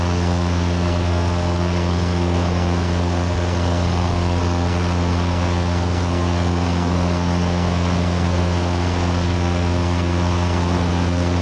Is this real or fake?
fake